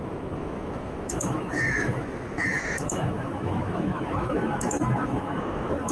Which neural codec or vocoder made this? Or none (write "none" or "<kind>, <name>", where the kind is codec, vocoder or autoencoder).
autoencoder, DAC-VAE